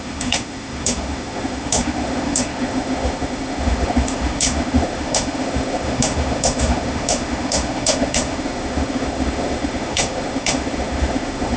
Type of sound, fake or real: fake